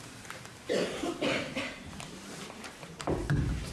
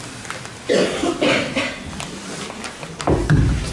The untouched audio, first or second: second